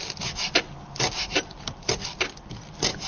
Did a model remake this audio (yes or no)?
no